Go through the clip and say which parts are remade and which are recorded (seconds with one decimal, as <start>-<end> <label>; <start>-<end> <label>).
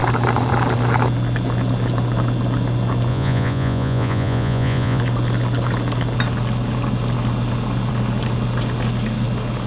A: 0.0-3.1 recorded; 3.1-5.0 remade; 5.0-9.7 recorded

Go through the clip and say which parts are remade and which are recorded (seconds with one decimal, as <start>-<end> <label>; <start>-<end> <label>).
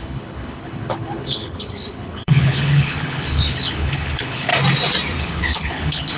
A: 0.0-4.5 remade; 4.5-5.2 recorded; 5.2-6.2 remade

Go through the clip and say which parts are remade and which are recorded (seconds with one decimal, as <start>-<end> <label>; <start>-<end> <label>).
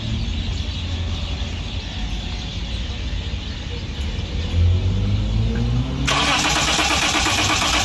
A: 0.0-7.8 recorded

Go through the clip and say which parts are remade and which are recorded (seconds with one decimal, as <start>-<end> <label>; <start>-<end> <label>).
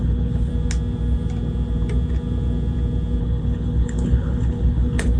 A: 0.0-0.5 remade; 0.5-3.2 recorded; 3.2-5.2 remade